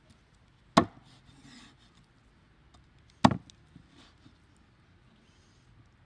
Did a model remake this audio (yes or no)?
no